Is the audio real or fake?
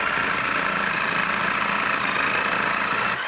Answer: real